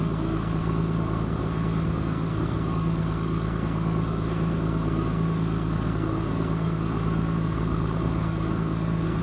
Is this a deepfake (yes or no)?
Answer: yes